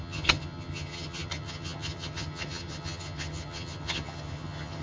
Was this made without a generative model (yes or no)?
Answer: no